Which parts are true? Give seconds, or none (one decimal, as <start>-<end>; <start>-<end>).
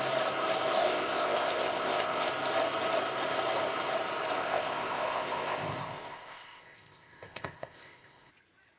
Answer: 0.0-0.8; 2.3-4.4; 8.3-8.8